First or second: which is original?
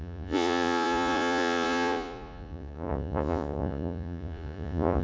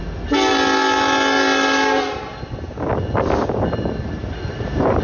second